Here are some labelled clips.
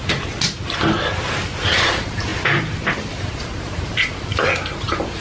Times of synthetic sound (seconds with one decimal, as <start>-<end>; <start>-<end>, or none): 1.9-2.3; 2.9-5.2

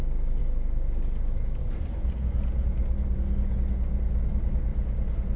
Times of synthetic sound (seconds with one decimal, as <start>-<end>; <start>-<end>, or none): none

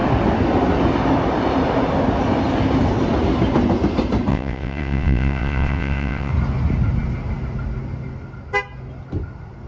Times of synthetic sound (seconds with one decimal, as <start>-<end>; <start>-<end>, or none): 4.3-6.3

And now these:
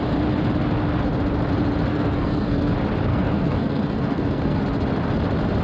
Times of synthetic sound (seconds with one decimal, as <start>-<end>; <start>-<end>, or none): 1.9-2.7; 3.1-4.6

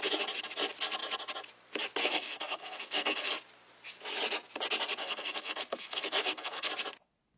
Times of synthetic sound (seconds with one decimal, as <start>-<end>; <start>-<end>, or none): 2.0-3.3; 5.0-6.7

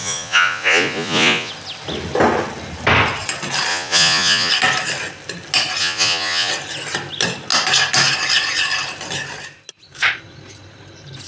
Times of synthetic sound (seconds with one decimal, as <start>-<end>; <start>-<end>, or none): 0.0-1.5; 3.7-4.5; 5.8-6.5